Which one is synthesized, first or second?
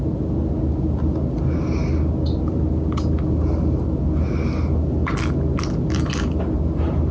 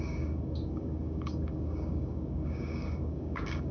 second